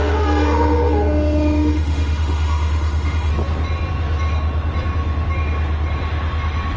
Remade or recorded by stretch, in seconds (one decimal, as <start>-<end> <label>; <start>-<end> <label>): 0.0-3.3 remade; 3.3-6.8 recorded